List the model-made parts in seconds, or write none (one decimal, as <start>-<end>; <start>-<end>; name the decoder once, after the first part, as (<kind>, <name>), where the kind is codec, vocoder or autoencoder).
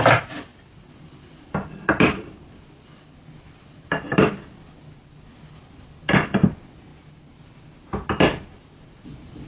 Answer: none